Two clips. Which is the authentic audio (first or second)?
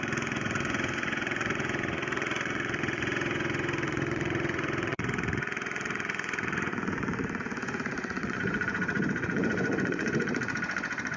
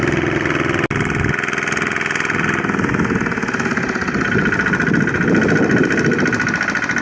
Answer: second